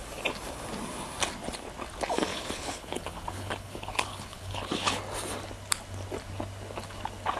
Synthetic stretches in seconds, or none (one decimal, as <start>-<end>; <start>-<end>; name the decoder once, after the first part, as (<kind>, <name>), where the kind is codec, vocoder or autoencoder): 2.3-5.0 (codec, HILCodec)